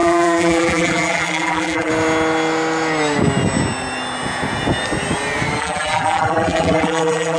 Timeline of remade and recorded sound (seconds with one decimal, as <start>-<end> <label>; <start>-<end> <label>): 0.0-1.9 remade; 1.9-5.6 recorded; 5.6-7.4 remade